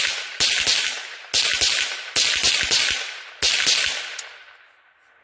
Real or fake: real